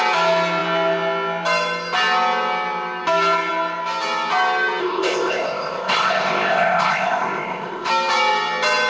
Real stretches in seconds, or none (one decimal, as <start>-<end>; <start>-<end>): 0.0-4.8; 7.9-8.9